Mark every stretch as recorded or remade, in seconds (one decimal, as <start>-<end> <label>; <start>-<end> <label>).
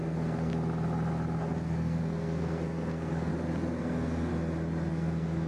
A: 0.0-0.5 remade; 0.5-1.4 recorded; 1.4-3.3 remade; 3.3-3.8 recorded; 3.8-4.3 remade; 4.3-4.9 recorded; 4.9-5.5 remade